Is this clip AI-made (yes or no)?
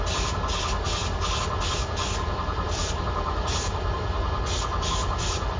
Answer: no